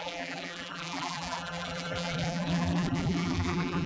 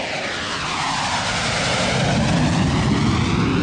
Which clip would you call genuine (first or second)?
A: second